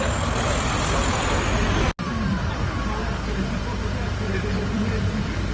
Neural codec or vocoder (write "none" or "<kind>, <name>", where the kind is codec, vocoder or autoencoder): none